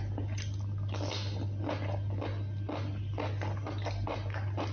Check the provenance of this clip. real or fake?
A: real